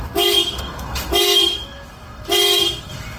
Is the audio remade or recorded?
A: remade